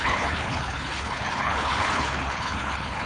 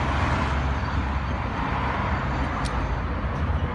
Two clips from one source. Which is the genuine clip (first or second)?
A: second